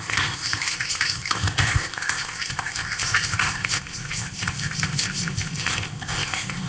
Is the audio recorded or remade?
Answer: remade